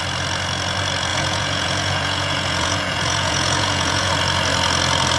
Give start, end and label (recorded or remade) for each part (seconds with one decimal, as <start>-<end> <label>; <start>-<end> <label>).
0.0-1.1 recorded; 1.1-4.1 remade; 4.1-5.2 recorded

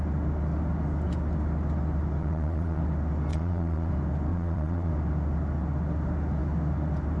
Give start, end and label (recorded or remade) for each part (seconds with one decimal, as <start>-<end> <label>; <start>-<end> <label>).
0.0-2.2 recorded; 2.2-2.8 remade; 2.8-3.3 recorded; 3.3-3.9 remade; 3.9-4.3 recorded; 4.3-4.9 remade; 4.9-7.2 recorded

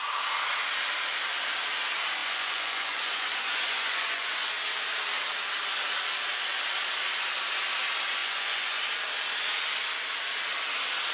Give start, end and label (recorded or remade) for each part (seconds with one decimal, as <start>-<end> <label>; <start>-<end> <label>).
0.0-2.2 recorded; 2.2-4.5 remade; 4.5-8.2 recorded; 8.2-8.8 remade; 8.8-11.1 recorded

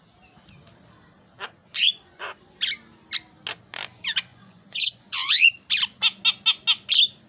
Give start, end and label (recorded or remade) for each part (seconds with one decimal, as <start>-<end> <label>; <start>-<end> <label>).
0.0-1.6 recorded; 1.6-2.6 remade; 2.6-4.3 recorded; 4.3-5.5 remade; 5.5-7.3 recorded

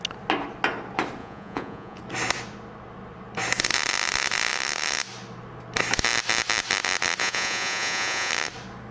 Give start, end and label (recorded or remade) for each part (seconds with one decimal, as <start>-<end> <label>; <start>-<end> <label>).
0.0-1.2 recorded; 1.2-2.0 remade; 2.0-7.2 recorded; 7.2-8.3 remade; 8.3-8.9 recorded

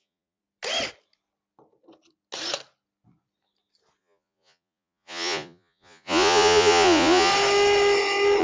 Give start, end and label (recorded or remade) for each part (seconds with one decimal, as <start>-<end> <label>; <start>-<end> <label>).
0.0-0.4 remade; 0.4-4.0 recorded; 4.0-7.3 remade; 7.3-8.4 recorded

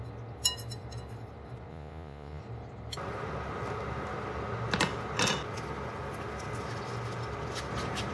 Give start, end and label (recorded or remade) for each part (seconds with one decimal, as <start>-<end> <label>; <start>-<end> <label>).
0.0-1.7 recorded; 1.7-2.4 remade; 2.4-8.1 recorded